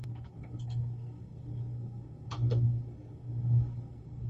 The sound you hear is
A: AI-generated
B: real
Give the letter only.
A